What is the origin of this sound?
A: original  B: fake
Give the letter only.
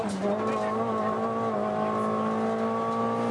A